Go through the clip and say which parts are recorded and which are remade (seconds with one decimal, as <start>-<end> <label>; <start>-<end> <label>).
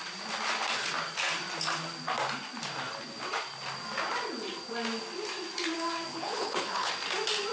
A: 0.0-6.1 recorded; 6.1-6.9 remade; 6.9-7.5 recorded